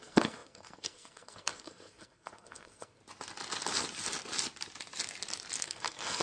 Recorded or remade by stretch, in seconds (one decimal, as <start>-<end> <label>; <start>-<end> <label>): 0.0-3.0 remade; 3.0-5.6 recorded; 5.6-6.2 remade

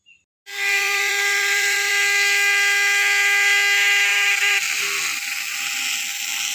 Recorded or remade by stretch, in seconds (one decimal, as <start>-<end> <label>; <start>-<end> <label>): 0.0-0.5 recorded; 0.5-1.9 remade; 1.9-4.1 recorded; 4.1-4.7 remade; 4.7-6.5 recorded

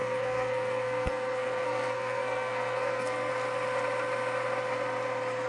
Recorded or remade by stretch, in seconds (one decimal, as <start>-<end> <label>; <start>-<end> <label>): 0.0-3.3 remade; 3.3-5.5 recorded

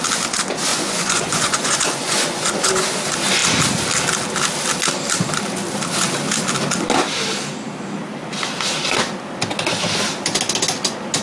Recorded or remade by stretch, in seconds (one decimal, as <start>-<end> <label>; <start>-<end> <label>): 0.0-0.7 recorded; 0.7-3.0 remade; 3.0-11.2 recorded

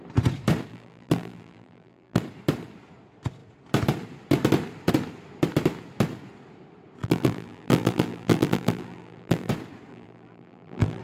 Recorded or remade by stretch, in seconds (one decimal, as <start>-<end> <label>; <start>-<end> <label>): 0.0-0.7 recorded; 0.7-2.2 remade; 2.2-7.0 recorded; 7.0-9.5 remade; 9.5-9.9 recorded; 9.9-11.0 remade

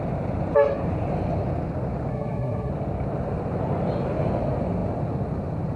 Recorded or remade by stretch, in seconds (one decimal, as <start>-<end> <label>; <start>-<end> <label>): 0.0-2.1 recorded; 2.1-2.7 remade; 2.7-5.8 recorded